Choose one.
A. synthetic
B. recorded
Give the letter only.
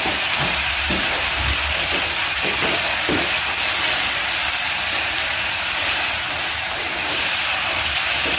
A